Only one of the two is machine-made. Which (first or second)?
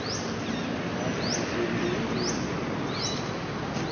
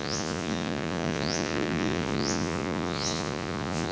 second